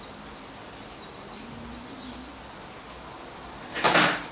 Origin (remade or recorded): recorded